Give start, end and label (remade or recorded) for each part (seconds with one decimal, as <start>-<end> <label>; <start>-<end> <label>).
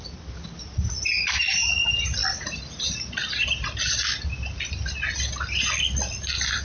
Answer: 0.0-6.6 recorded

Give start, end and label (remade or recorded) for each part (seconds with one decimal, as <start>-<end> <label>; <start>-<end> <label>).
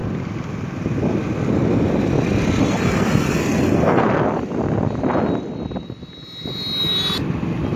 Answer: 0.0-2.6 recorded; 2.6-4.0 remade; 4.0-7.8 recorded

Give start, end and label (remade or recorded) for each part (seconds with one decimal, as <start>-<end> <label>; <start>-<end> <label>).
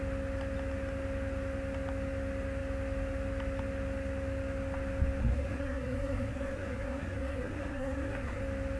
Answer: 0.0-5.2 recorded; 5.2-8.4 remade; 8.4-8.8 recorded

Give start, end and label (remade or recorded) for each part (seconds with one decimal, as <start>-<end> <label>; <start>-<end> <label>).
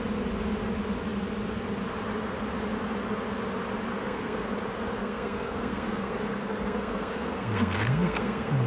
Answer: 0.0-3.9 recorded; 3.9-4.5 remade; 4.5-5.0 recorded; 5.0-8.7 remade